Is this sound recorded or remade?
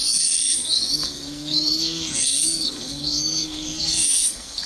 remade